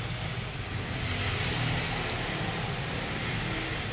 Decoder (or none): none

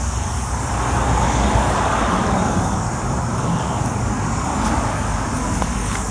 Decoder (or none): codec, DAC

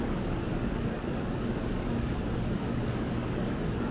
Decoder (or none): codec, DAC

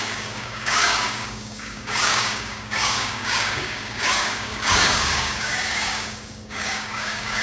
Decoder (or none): codec, DAC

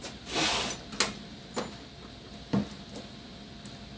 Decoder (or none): none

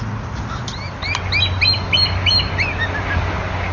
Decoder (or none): none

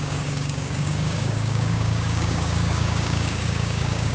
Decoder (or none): codec, DAC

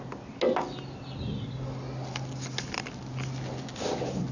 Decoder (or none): none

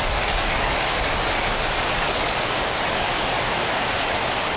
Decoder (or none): codec, DAC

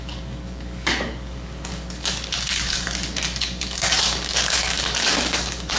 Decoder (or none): codec, DAC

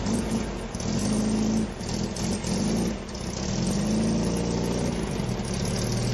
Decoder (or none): none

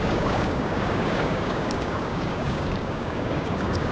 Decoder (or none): codec, DAC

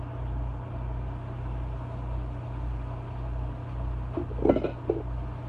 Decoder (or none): none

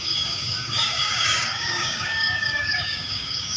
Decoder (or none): codec, DAC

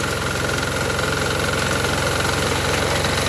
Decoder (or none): none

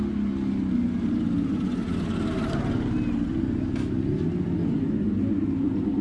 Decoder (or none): none